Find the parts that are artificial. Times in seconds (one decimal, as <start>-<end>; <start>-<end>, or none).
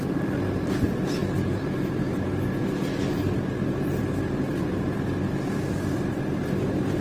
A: none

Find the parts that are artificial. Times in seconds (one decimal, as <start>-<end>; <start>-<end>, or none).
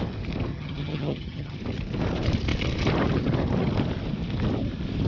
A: 0.5-1.6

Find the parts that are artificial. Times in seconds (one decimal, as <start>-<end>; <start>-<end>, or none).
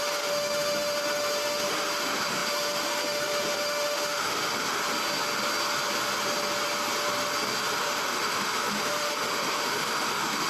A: 0.0-4.8; 7.8-10.5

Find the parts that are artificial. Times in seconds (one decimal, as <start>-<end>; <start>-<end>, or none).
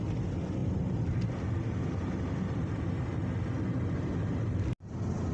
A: none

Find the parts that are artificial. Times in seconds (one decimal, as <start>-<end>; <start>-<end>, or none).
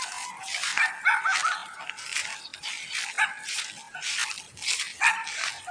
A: none